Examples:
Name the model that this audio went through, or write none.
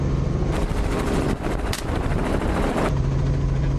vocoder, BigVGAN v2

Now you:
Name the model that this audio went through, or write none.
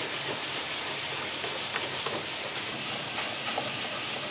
none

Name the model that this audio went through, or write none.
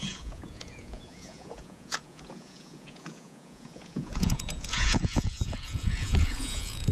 vocoder, Vocos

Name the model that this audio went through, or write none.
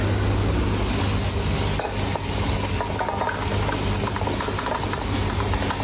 none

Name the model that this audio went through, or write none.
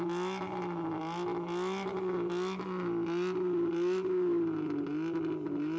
none